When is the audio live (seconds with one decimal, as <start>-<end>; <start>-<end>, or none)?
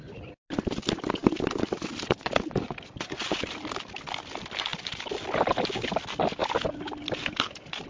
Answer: 0.0-7.9